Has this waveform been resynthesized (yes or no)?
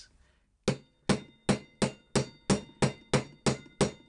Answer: no